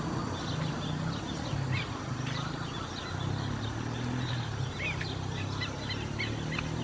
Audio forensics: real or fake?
real